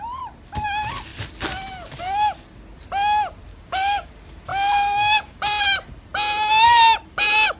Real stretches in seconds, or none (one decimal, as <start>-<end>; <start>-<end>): 0.0-3.5; 4.1-4.5; 5.4-7.6